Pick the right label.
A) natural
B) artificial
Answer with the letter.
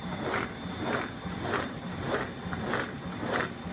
A